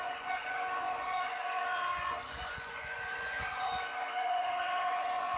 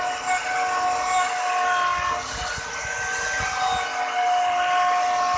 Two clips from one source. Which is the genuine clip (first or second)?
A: second